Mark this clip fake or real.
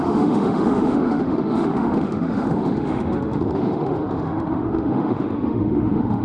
fake